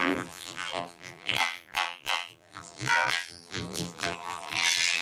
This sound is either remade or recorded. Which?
remade